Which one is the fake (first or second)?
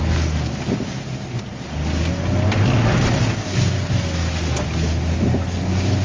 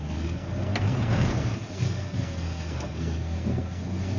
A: second